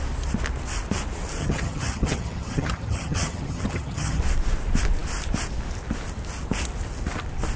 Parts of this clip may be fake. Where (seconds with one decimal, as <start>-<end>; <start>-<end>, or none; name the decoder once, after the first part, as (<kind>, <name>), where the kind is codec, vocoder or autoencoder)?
1.4-4.2 (vocoder, HiFi-GAN)

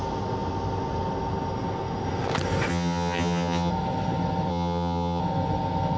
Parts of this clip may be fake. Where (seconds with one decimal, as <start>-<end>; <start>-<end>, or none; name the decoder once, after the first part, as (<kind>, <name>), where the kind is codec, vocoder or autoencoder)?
2.7-3.7 (vocoder, HiFi-GAN); 4.5-5.2

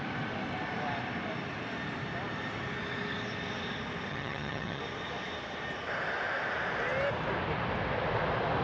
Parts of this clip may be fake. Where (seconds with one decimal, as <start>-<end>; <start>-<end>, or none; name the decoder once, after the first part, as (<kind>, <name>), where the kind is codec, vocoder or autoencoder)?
4.1-4.8 (vocoder, HiFi-GAN)

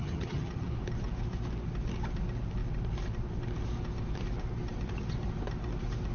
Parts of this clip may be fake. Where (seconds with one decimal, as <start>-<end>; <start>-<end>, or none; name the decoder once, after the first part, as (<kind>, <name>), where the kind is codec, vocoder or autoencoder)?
0.0-0.7 (vocoder, HiFi-GAN)

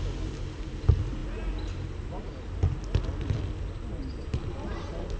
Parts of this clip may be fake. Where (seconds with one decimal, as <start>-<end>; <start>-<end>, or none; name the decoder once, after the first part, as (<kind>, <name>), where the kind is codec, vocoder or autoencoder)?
none

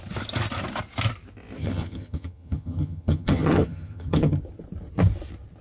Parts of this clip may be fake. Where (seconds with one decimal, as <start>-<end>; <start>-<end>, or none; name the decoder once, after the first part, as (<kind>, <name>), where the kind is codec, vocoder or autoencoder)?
1.6-4.4 (vocoder, HiFi-GAN)